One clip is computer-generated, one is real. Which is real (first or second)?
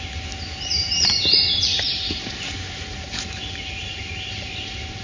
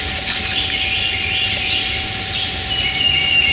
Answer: second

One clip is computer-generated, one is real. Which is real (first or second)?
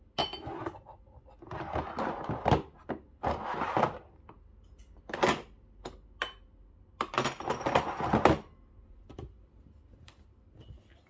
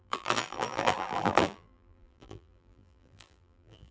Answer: first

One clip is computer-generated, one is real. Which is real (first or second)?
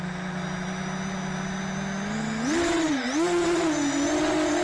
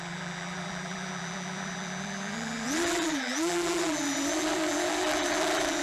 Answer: first